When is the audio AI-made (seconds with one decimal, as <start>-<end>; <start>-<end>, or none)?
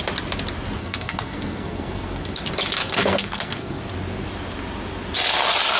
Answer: 0.8-2.4; 2.8-3.8